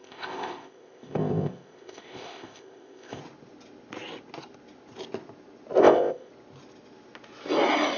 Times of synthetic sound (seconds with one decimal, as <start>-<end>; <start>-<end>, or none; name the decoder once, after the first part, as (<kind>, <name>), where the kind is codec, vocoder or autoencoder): 0.0-3.2 (codec, ZipCodec); 5.8-6.3